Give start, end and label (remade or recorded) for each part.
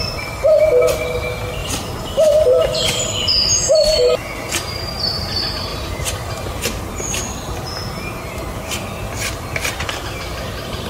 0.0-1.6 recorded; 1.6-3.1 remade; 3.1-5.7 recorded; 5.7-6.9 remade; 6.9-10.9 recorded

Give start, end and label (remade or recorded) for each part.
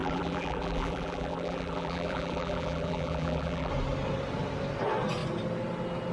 0.0-3.7 remade; 3.7-6.1 recorded